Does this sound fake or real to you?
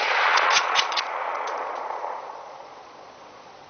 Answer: fake